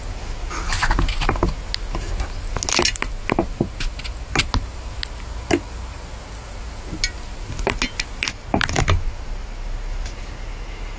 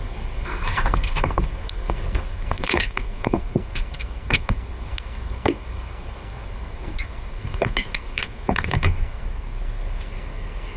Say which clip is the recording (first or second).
first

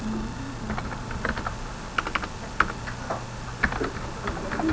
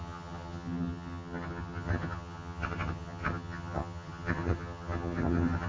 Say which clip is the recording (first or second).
first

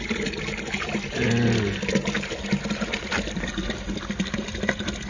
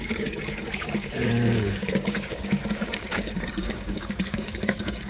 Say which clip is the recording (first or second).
first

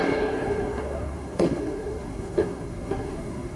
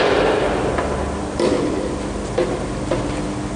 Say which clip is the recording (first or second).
second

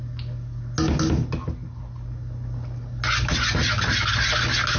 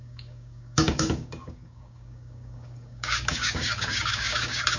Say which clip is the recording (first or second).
first